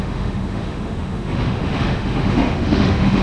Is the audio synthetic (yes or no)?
yes